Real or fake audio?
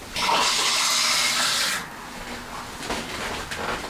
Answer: real